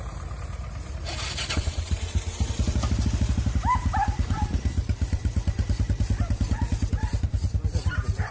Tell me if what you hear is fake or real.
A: fake